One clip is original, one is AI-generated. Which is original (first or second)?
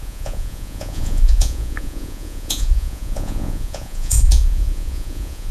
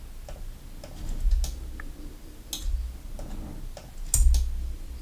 second